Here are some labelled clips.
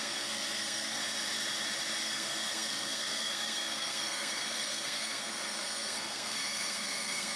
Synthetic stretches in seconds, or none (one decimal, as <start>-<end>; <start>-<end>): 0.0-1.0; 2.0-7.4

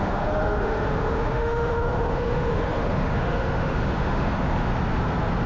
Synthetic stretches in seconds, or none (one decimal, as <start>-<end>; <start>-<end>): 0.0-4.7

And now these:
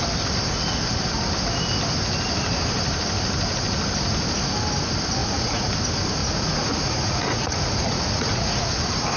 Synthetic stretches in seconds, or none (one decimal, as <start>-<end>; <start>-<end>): 5.2-5.7; 6.2-8.7

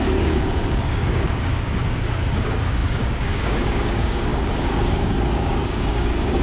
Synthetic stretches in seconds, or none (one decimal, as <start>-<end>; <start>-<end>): 0.0-6.4